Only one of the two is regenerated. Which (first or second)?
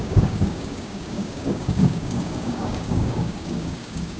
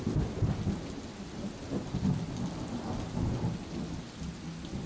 first